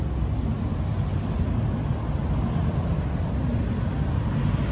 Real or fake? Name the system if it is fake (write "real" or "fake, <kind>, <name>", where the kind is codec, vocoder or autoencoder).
real